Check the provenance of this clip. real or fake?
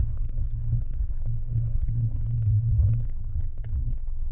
fake